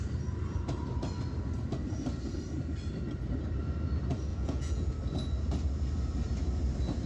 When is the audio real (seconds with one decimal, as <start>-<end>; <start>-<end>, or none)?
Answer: 0.0-4.3; 4.9-7.1